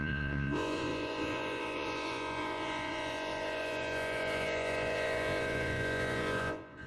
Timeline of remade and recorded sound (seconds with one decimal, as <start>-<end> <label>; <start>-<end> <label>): 0.0-6.9 remade